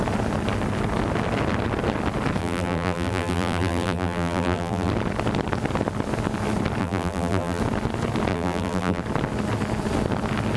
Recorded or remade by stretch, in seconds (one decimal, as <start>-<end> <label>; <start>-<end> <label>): 0.0-2.4 recorded; 2.4-4.9 remade; 4.9-6.8 recorded; 6.8-7.6 remade; 7.6-8.3 recorded; 8.3-9.0 remade; 9.0-10.6 recorded